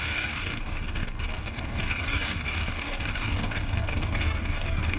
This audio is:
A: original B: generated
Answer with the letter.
B